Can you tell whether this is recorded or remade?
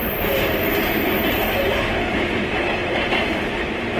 remade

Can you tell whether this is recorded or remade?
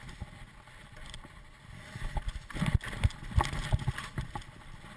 recorded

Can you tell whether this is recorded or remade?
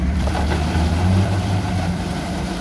remade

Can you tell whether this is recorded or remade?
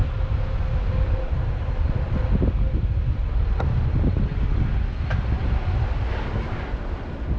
recorded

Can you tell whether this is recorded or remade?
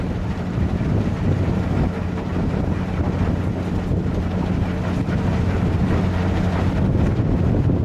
recorded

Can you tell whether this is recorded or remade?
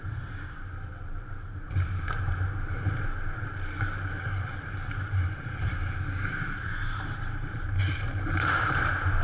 remade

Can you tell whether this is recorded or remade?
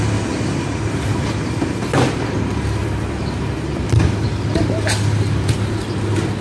recorded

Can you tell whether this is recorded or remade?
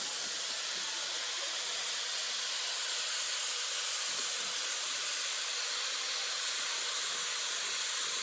recorded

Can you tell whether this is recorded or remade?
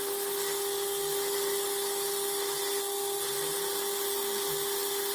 recorded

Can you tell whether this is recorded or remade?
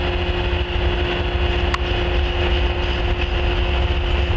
recorded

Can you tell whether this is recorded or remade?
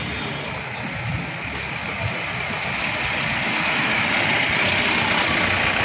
recorded